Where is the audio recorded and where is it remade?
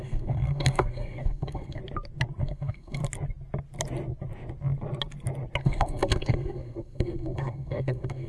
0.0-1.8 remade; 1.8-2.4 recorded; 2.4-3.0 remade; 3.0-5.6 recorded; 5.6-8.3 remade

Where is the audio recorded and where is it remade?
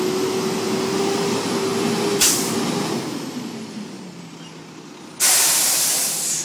0.0-6.4 recorded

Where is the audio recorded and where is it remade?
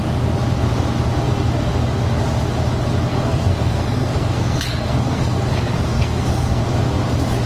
0.0-3.1 recorded; 3.1-6.6 remade; 6.6-7.5 recorded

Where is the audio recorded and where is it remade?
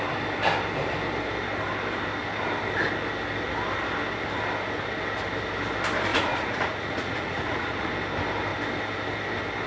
0.0-6.1 recorded; 6.1-7.9 remade; 7.9-9.7 recorded